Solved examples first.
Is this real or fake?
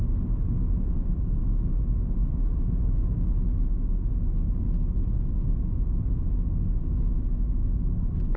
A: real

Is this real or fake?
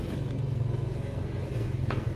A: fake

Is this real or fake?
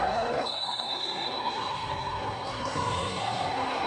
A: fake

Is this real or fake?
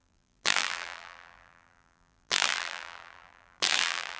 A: fake